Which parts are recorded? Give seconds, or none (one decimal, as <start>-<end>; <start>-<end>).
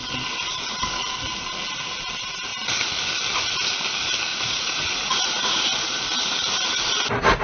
0.0-4.3; 6.0-7.4